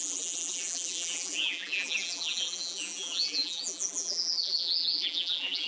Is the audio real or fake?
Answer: fake